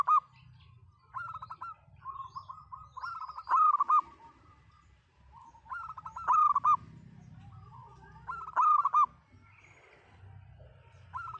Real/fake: real